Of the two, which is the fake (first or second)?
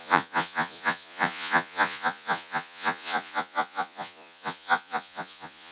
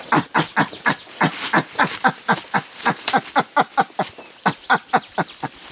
first